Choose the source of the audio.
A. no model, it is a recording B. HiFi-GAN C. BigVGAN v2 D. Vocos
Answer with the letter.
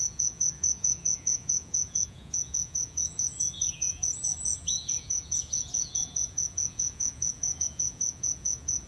D